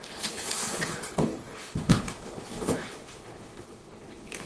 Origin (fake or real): fake